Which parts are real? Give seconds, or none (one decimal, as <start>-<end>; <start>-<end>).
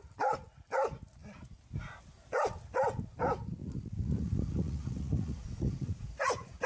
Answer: 0.0-3.6